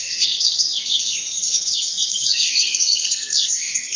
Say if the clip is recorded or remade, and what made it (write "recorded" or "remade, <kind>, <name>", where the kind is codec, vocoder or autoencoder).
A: remade, codec, SNAC